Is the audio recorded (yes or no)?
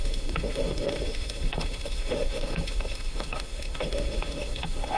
no